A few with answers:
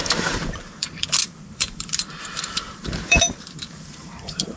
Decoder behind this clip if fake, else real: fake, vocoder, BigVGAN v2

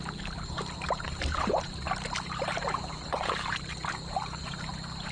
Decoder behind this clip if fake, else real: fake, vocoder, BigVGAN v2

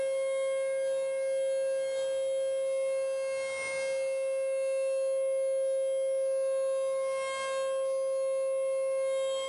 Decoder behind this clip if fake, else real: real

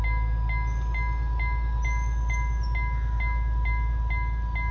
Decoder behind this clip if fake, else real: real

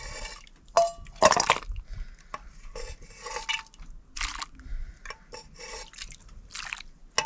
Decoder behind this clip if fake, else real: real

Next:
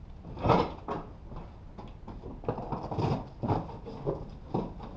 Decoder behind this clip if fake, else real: real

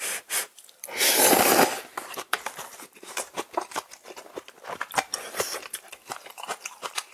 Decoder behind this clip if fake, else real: fake, vocoder, BigVGAN v2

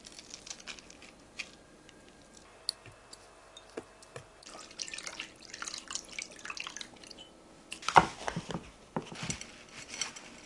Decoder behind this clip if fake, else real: real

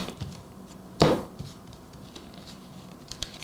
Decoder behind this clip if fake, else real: fake, vocoder, BigVGAN v2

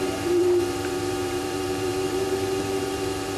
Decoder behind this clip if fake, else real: fake, vocoder, BigVGAN v2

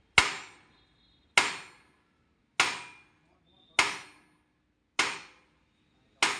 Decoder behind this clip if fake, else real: real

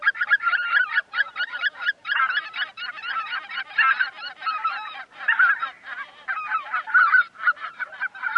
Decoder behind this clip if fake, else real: fake, vocoder, BigVGAN v2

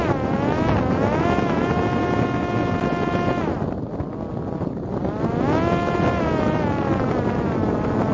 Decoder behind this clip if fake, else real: real